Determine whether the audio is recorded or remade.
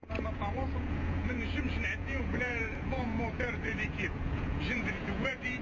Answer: remade